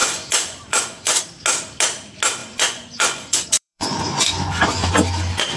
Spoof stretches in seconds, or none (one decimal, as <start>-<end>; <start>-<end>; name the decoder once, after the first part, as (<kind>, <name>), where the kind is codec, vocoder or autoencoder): 0.0-1.2 (vocoder, Vocos); 2.4-4.9